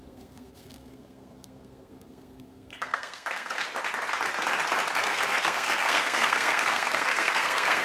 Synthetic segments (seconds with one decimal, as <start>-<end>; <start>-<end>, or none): 0.0-3.6; 5.0-7.8